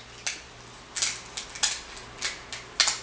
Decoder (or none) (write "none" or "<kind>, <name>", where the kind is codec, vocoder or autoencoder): none